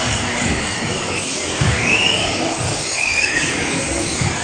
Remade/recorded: remade